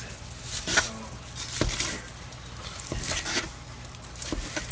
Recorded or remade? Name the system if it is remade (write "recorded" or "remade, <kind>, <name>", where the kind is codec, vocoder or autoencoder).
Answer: recorded